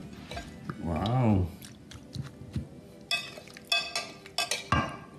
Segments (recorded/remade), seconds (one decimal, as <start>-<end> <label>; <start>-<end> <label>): 0.0-5.2 recorded